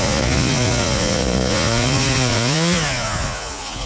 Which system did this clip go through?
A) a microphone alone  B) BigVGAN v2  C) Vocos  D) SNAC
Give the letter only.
C